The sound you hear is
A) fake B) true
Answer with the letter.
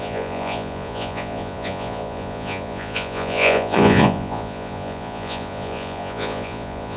A